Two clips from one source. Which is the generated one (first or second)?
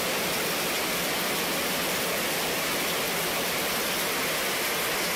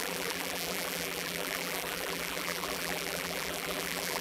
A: second